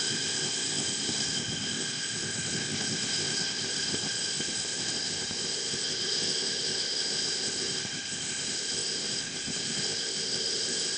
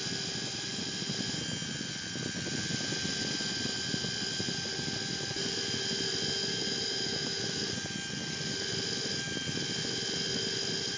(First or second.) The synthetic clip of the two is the first